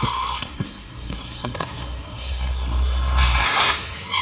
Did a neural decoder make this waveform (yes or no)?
yes